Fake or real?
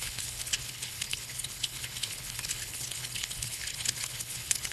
fake